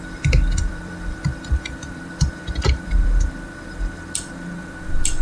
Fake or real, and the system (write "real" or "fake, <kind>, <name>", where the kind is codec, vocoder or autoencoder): fake, vocoder, BigVGAN v2